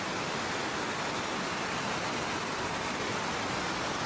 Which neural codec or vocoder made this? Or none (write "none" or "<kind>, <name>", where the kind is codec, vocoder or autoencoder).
none